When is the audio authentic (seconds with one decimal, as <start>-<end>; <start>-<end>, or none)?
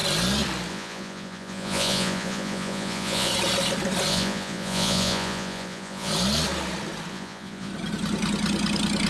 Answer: 0.0-0.7; 3.3-4.1; 6.1-7.1; 7.7-9.1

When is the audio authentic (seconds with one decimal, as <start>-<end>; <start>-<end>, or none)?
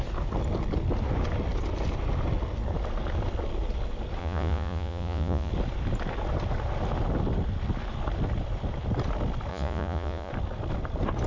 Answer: 0.0-4.2; 5.5-9.5; 10.3-11.3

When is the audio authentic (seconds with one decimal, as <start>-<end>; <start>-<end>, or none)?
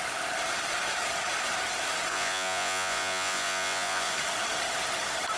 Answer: 0.0-2.1; 4.1-5.4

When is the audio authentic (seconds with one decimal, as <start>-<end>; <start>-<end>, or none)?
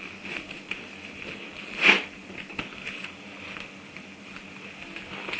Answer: 0.0-5.4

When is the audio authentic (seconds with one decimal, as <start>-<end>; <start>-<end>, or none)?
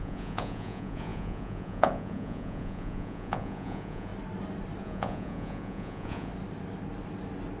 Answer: 4.1-4.8; 6.3-7.6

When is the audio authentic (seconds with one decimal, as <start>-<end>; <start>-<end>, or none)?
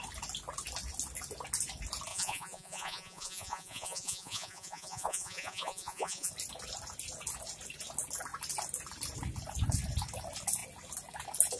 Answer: 0.0-2.1; 6.3-11.6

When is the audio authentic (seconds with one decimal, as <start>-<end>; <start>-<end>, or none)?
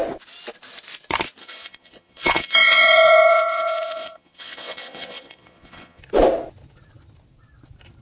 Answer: 0.0-1.4; 6.0-8.0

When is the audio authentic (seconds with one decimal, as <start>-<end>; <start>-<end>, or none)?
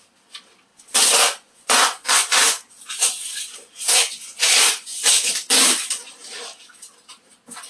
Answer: 0.0-0.7; 5.3-7.7